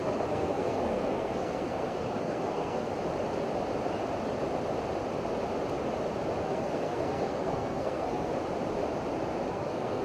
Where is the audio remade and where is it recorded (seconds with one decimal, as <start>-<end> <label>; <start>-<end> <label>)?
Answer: 0.0-2.9 remade; 2.9-6.4 recorded; 6.4-8.3 remade; 8.3-9.5 recorded; 9.5-10.0 remade